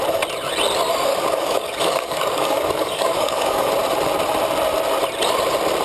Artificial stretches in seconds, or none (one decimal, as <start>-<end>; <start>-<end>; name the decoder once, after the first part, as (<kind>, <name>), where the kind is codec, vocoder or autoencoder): 1.1-3.7 (codec, DAC)